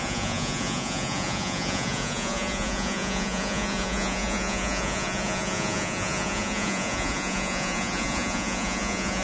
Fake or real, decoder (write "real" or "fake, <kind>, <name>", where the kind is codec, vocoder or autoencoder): fake, vocoder, Vocos